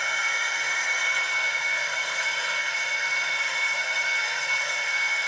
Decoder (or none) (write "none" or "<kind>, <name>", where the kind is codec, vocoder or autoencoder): codec, SNAC